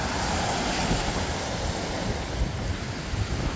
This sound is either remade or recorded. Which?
recorded